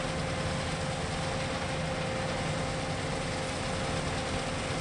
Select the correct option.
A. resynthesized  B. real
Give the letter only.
B